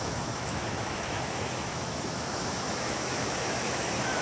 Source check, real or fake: fake